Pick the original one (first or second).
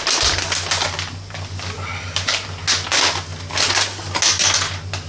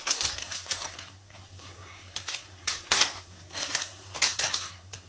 first